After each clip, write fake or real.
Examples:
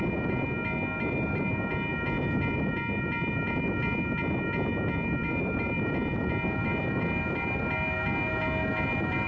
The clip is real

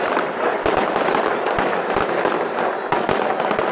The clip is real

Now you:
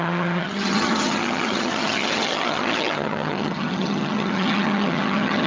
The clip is fake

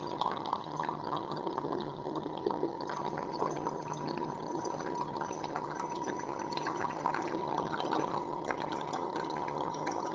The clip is fake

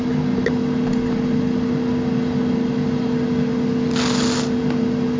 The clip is real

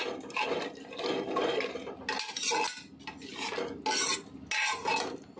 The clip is real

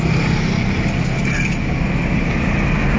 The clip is real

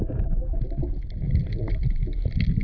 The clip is real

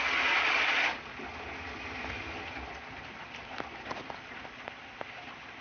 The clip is real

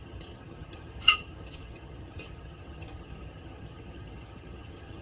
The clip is fake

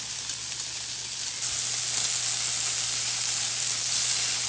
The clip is real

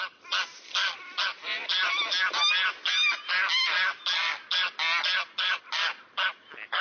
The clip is real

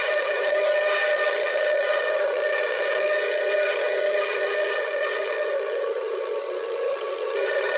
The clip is fake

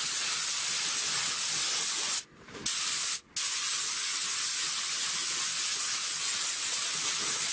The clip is real